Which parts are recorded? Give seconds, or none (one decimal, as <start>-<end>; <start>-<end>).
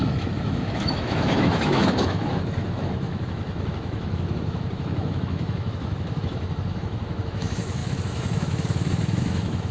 none